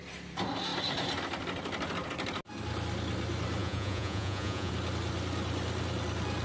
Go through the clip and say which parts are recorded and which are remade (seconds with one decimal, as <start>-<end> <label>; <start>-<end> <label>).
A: 0.0-3.6 recorded; 3.6-4.7 remade; 4.7-6.4 recorded